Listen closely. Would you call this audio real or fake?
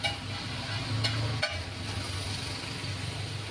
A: real